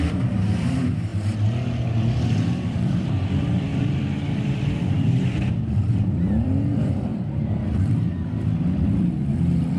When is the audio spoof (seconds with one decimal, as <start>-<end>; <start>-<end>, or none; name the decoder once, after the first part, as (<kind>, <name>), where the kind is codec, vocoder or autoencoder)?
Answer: 0.0-1.1 (vocoder, BigVGAN v2); 2.5-9.8